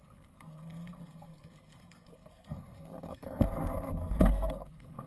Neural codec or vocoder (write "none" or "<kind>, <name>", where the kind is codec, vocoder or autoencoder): codec, SNAC